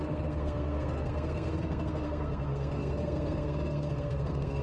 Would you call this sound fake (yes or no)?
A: yes